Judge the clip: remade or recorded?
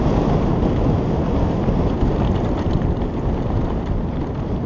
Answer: recorded